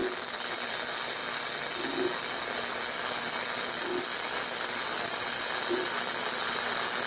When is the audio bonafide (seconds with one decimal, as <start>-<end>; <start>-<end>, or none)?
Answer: 0.0-7.1